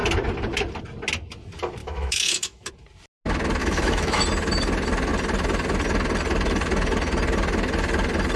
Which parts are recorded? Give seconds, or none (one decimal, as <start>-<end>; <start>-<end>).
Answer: 0.0-1.8; 2.7-3.6; 4.2-8.4